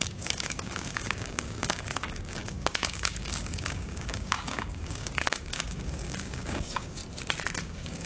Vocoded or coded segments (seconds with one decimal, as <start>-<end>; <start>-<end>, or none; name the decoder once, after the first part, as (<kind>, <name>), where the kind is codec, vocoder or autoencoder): 0.0-7.0 (codec, DAC); 7.6-8.1